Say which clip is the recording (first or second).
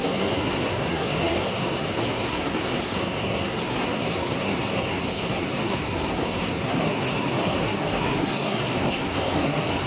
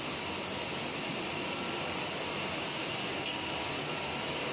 second